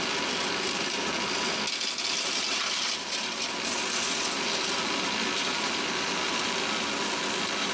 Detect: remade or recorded recorded